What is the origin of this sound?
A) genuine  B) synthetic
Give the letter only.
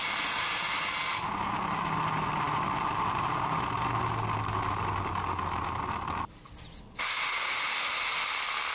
A